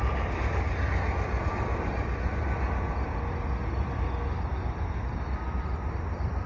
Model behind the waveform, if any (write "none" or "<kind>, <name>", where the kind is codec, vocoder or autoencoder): none